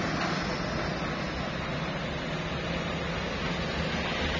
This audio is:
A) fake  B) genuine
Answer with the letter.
B